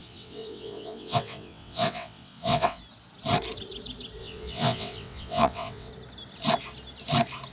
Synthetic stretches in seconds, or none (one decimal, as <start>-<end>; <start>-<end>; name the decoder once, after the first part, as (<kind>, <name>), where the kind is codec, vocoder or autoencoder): 0.0-2.8 (vocoder, WaveNeXt); 4.2-5.9